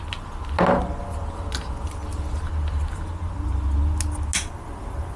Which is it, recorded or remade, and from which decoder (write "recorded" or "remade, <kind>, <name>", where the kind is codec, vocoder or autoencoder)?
recorded